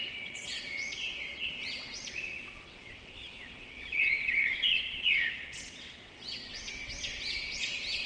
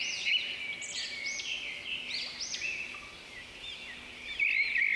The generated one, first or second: first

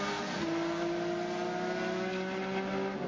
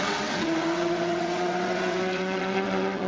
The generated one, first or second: second